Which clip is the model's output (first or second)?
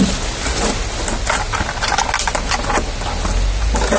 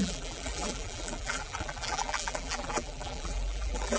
second